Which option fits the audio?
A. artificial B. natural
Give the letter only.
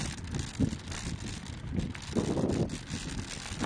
B